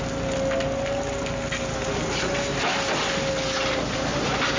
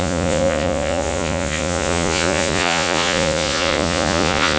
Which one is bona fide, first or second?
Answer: first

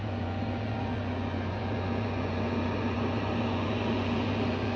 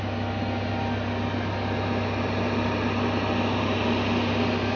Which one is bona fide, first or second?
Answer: second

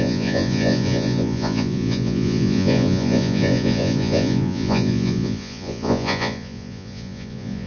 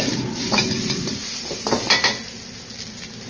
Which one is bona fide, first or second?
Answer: second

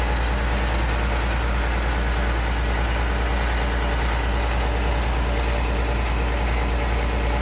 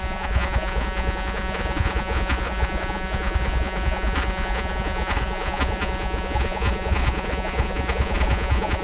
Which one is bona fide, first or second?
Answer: first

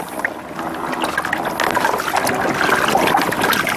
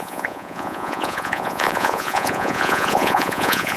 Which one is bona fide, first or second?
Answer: first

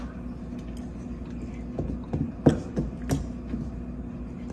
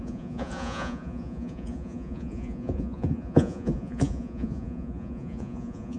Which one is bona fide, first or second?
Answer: first